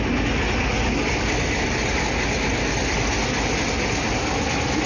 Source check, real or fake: real